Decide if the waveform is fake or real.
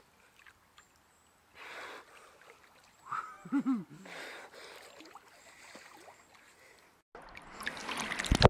real